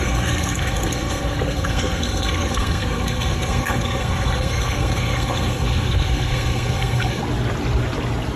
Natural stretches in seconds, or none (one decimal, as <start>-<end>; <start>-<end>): 7.2-8.4